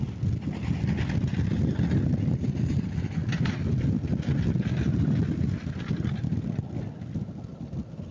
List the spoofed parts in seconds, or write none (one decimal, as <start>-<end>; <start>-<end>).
none

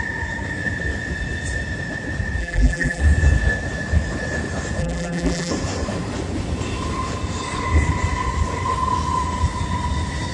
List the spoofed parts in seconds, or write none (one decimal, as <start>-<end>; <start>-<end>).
2.4-3.0; 4.8-5.5

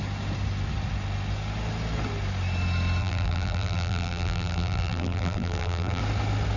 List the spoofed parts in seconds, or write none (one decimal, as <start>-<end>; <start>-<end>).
3.0-6.0